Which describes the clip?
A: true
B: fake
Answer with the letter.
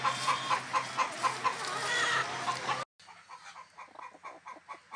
A